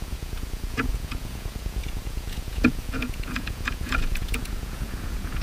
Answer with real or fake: fake